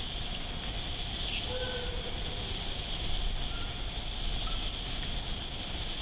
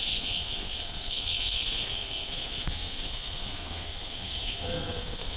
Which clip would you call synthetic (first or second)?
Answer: second